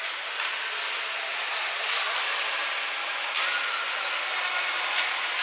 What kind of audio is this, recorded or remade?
recorded